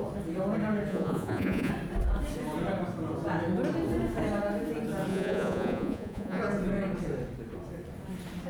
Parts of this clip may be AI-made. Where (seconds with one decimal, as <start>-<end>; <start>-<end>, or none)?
0.9-1.7; 5.1-6.4